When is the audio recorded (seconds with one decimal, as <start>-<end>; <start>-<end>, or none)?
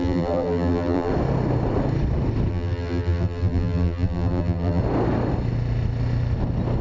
1.1-2.5; 4.8-6.8